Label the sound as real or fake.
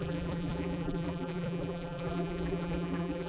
fake